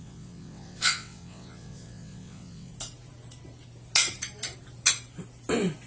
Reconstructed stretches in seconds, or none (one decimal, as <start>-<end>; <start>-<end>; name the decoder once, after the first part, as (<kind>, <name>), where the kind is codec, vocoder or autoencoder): 0.0-2.7 (vocoder, WaveNeXt)